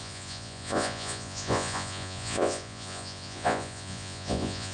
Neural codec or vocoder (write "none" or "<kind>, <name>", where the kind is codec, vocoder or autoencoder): vocoder, Vocos